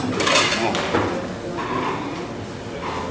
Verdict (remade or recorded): recorded